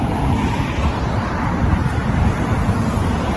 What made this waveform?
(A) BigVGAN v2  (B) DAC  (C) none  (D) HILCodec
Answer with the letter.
C